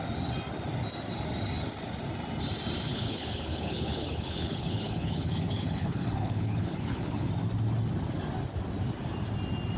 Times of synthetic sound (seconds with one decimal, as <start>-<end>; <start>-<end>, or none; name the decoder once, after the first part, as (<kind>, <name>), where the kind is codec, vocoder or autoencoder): 2.9-7.3 (codec, HILCodec)